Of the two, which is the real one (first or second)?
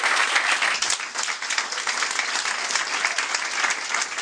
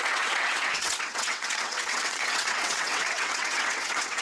first